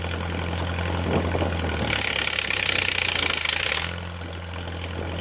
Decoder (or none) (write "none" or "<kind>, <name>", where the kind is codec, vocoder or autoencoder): none